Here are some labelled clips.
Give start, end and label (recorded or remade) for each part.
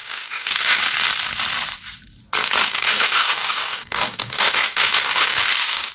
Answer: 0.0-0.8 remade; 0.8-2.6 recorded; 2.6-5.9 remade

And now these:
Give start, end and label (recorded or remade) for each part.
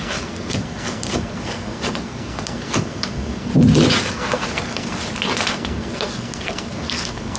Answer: 0.0-3.5 remade; 3.5-4.1 recorded; 4.1-5.0 remade; 5.0-5.5 recorded; 5.5-7.4 remade